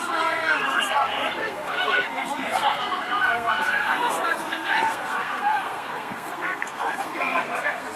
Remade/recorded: remade